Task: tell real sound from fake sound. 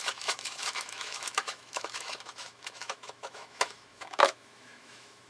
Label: fake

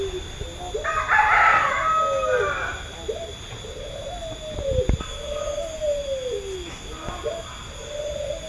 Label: real